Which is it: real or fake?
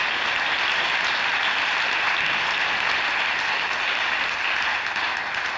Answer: real